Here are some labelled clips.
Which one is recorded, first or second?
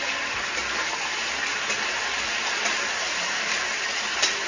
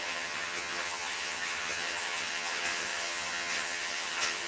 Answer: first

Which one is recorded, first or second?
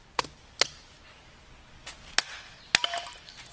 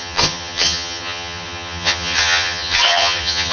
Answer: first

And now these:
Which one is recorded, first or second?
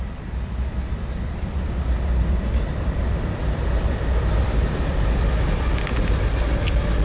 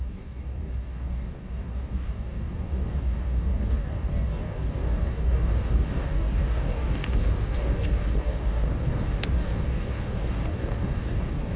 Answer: first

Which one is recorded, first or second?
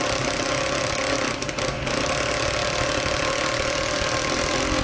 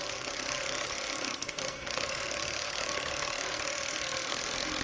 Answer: first